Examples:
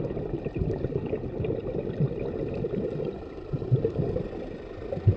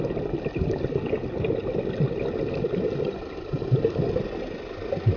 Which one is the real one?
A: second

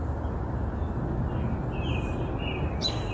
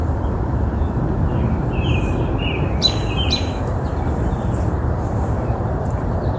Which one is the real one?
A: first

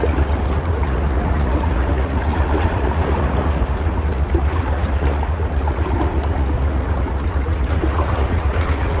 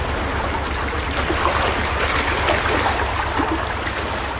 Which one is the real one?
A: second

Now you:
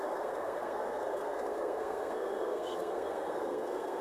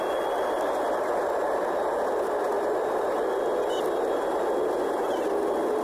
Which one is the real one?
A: second